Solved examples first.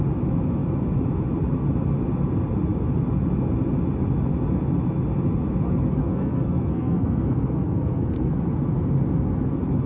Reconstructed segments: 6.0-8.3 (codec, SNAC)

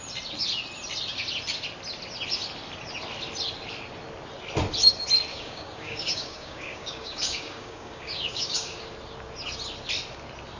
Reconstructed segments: 5.3-8.8 (codec, DAC)

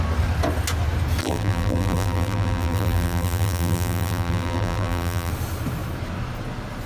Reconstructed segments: 1.2-5.3 (vocoder, BigVGAN v2)

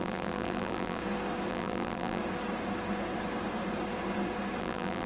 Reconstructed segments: 0.0-1.0 (vocoder, BigVGAN v2); 1.5-2.2; 4.6-5.1

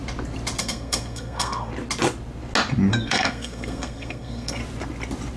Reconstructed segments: 0.6-1.7 (codec, SNAC); 2.9-4.6

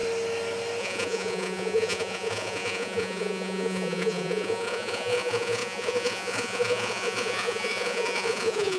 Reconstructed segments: 0.8-8.8 (vocoder, Vocos)